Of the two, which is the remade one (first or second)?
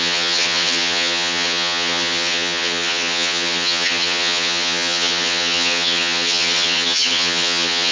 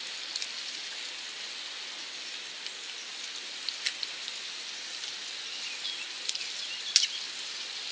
first